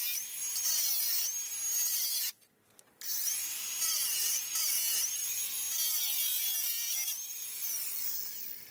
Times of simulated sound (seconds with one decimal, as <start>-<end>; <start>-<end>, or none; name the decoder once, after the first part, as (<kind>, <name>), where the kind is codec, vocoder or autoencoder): none